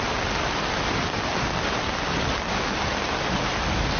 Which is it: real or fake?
real